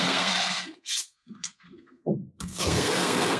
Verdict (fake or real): fake